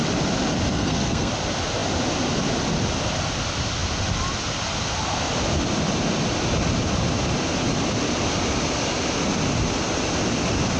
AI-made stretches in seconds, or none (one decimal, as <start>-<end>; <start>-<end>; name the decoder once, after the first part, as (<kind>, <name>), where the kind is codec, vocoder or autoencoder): 0.7-1.3 (codec, SNAC)